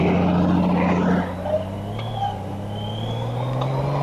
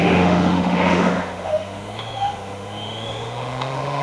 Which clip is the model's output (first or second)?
second